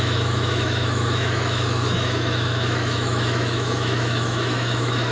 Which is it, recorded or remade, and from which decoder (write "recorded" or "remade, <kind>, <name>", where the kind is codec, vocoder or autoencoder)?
remade, autoencoder, DAC-VAE